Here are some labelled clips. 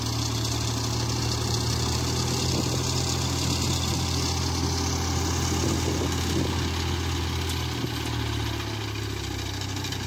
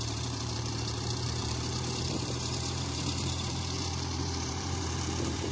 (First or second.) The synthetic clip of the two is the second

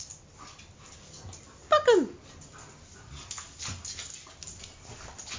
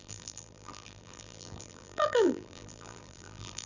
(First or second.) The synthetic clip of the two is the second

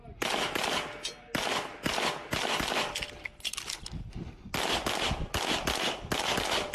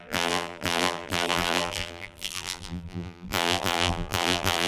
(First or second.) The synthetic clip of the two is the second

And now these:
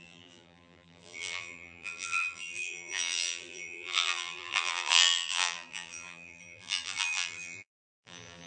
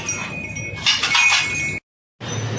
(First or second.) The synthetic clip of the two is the first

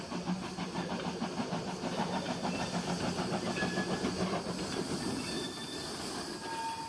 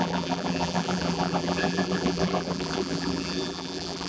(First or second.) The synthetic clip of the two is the second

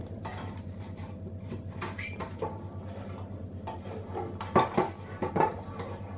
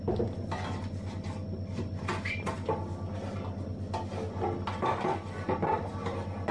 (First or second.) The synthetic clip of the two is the first